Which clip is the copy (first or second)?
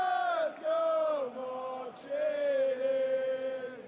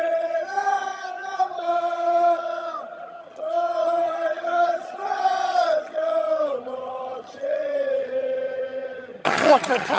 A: second